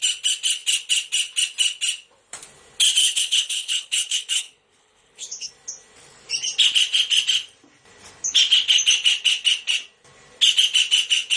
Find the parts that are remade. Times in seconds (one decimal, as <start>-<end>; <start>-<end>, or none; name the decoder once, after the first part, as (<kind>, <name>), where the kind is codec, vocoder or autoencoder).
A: 3.0-5.5 (codec, HILCodec)